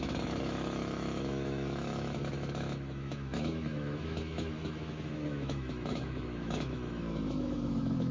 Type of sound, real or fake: fake